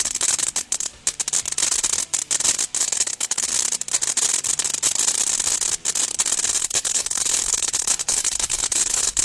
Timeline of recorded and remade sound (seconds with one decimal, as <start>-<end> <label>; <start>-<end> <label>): 0.0-0.9 remade; 0.9-2.8 recorded; 2.8-3.5 remade; 3.5-6.6 recorded; 6.6-9.2 remade